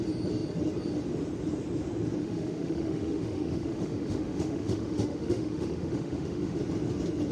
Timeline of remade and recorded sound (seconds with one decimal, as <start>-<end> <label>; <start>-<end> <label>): 0.0-2.2 recorded; 2.2-6.6 remade; 6.6-7.3 recorded